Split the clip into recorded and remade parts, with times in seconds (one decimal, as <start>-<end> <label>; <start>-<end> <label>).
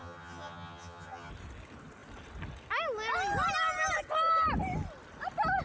0.0-1.3 remade; 1.3-5.6 recorded